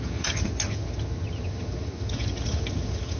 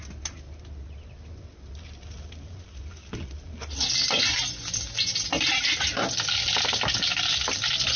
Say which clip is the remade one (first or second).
first